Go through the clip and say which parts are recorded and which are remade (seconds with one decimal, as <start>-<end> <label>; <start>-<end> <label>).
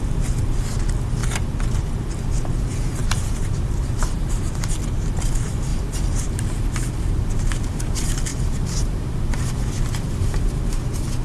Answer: 0.0-3.0 recorded; 3.0-4.5 remade; 4.5-5.7 recorded; 5.7-6.4 remade; 6.4-8.3 recorded; 8.3-10.6 remade; 10.6-11.2 recorded